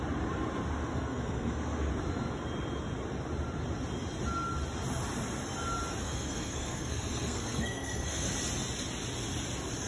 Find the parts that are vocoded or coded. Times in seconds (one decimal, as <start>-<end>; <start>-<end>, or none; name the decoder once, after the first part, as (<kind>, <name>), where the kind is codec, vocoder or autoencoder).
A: 0.9-1.9 (codec, SNAC); 6.0-8.3